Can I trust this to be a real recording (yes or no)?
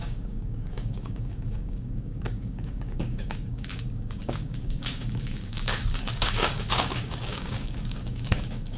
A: no